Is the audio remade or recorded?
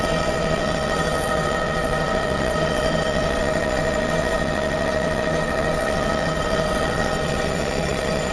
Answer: remade